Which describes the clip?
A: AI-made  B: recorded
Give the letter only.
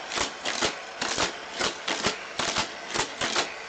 B